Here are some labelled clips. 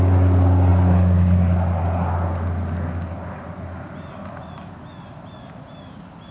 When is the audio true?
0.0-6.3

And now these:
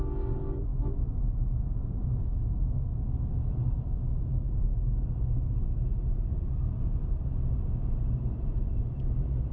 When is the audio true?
0.0-9.5